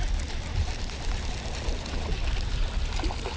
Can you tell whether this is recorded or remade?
recorded